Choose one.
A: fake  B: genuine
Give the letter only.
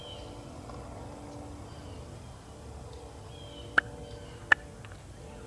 B